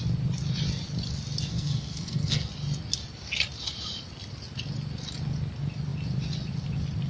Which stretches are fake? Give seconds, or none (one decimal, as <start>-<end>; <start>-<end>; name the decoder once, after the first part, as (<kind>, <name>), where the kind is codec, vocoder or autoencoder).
1.5-2.5 (codec, SNAC)